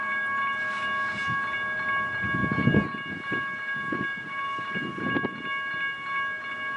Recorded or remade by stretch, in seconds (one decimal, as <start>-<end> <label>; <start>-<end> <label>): 0.0-6.8 recorded